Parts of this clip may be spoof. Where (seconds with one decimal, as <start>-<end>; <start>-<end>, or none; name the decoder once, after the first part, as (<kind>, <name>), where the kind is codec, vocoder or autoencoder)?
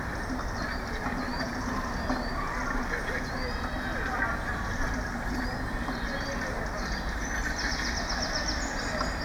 none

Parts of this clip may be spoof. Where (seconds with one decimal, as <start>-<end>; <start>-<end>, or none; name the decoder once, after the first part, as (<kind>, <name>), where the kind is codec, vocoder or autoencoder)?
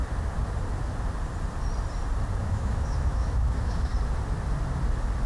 2.4-3.9 (autoencoder, DAC-VAE)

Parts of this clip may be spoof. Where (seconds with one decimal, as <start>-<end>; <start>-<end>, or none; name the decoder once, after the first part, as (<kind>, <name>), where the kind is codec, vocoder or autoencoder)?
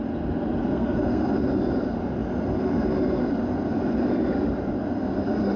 0.7-1.3 (codec, SNAC)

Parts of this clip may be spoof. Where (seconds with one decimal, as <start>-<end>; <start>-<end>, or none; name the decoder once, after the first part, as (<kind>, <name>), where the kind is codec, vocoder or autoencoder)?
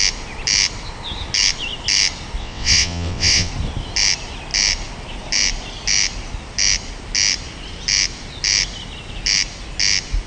2.4-3.5 (vocoder, WaveNeXt)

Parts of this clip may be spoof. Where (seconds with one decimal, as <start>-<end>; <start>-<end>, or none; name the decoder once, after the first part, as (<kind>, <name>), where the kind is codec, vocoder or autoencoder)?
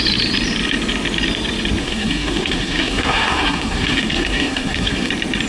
1.8-5.1 (codec, SNAC)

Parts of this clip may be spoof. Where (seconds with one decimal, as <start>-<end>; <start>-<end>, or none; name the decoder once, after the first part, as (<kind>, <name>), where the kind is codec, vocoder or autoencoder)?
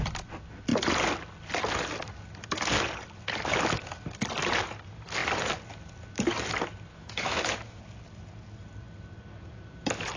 6.9-7.8 (autoencoder, DAC-VAE)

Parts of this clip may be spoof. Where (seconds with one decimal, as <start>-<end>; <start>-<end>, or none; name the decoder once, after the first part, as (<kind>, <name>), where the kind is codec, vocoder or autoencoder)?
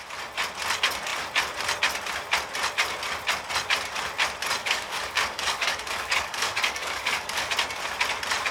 4.6-7.5 (codec, DAC)